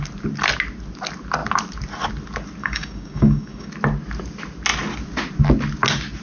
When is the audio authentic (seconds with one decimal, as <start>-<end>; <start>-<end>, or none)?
0.0-2.6; 3.7-6.2